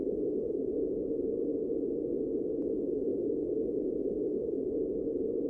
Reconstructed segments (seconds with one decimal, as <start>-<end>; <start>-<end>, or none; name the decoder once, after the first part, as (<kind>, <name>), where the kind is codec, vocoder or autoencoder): 1.5-2.3 (autoencoder, DAC-VAE); 3.1-5.0

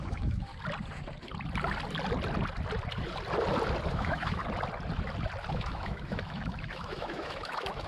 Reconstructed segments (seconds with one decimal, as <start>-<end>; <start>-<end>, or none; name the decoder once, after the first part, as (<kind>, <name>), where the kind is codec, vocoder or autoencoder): 0.0-0.5 (autoencoder, DAC-VAE); 3.9-4.4; 5.5-7.9

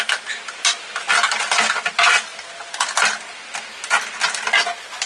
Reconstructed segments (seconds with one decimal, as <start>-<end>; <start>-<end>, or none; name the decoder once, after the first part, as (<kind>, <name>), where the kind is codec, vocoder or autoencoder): none

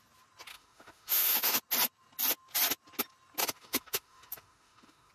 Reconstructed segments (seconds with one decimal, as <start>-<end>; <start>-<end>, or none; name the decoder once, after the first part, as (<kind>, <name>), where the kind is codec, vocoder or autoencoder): 0.5-1.6 (autoencoder, DAC-VAE); 3.4-5.1

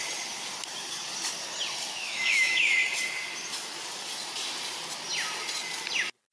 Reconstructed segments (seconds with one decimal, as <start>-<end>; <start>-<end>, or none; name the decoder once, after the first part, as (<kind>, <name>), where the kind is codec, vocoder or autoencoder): 1.9-2.8 (autoencoder, DAC-VAE)

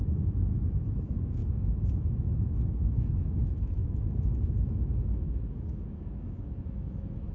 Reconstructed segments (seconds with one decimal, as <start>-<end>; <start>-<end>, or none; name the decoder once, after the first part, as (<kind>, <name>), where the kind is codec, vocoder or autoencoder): 0.0-7.3 (autoencoder, DAC-VAE)